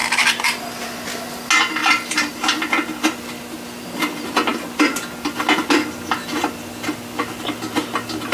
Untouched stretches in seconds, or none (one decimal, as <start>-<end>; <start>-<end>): 1.1-1.8; 2.3-8.3

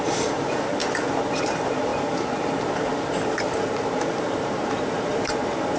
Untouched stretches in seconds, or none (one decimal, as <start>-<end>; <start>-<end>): none

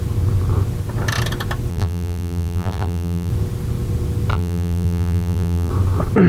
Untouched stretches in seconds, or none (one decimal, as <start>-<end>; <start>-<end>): 0.0-1.7; 3.3-4.3; 5.7-6.3

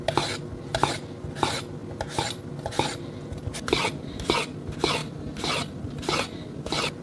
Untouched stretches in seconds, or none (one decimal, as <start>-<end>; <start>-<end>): 0.0-5.0; 6.6-7.0